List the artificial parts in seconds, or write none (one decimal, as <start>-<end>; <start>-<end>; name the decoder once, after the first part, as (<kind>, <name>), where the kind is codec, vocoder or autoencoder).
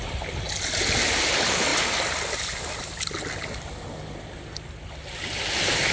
none